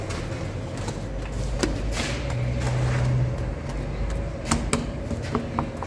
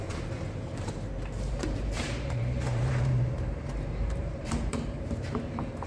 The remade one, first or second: second